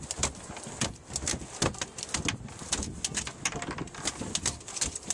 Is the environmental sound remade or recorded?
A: recorded